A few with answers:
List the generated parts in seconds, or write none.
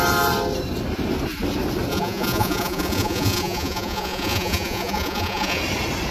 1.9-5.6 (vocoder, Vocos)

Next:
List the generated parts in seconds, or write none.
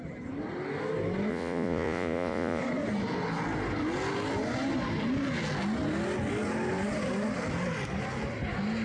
1.3-2.6 (vocoder, Vocos)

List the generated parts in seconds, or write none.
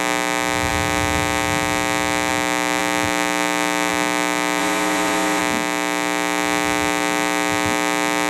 4.6-5.4 (vocoder, Vocos)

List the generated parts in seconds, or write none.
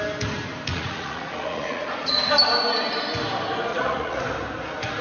0.7-2.1 (vocoder, Vocos); 3.7-4.2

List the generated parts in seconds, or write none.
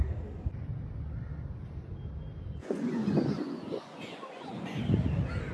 2.6-4.8 (vocoder, Vocos)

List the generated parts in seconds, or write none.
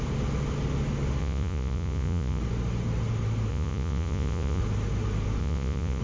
1.2-2.4 (vocoder, Vocos); 3.5-4.6; 5.4-6.0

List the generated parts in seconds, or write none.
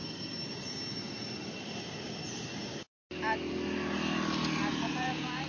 4.7-5.5 (vocoder, Vocos)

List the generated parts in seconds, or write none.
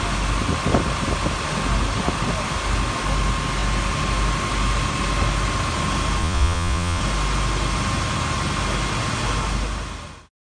6.2-7.0 (vocoder, Vocos)